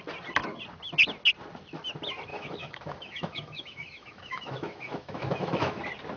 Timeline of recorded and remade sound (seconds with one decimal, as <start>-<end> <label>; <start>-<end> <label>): 0.0-2.3 recorded; 2.3-5.8 remade; 5.8-6.2 recorded